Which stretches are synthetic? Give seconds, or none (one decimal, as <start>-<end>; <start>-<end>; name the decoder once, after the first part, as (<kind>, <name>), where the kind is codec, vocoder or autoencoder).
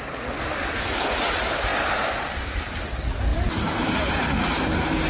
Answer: none